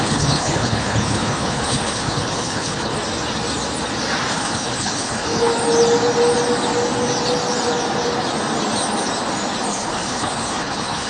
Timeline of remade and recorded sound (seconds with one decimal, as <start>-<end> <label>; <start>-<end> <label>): 0.0-2.9 remade; 2.9-4.3 recorded; 4.3-5.5 remade; 5.5-9.7 recorded; 9.7-11.1 remade